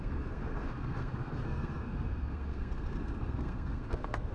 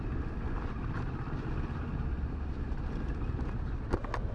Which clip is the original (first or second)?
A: second